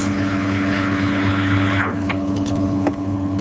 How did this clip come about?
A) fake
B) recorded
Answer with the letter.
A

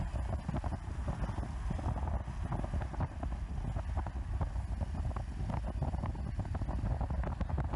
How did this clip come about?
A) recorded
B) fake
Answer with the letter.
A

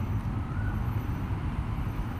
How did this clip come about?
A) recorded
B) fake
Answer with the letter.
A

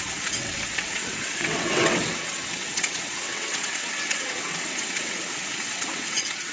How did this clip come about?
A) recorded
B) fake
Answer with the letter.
B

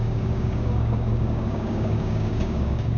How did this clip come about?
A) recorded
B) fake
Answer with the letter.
B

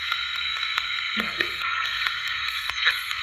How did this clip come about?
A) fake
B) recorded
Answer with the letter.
A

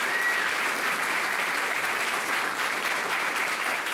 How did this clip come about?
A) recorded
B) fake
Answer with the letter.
B